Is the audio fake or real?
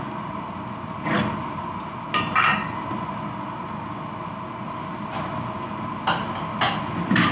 real